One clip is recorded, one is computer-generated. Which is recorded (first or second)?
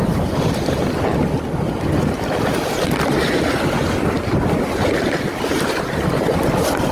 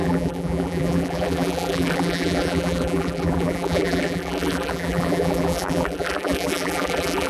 first